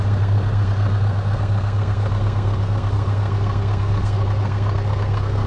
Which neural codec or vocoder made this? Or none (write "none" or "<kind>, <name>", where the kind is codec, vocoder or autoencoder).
codec, SNAC